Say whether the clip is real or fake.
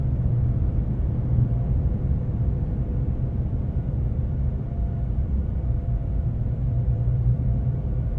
fake